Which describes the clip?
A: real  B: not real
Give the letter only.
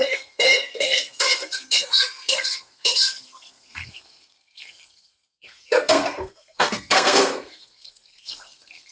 B